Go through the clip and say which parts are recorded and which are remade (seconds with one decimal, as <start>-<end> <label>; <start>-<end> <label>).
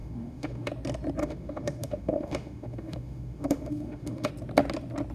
0.0-0.7 remade; 0.7-1.2 recorded; 1.2-4.3 remade; 4.3-5.1 recorded